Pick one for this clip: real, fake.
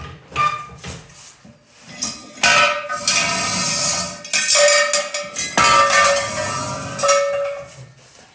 real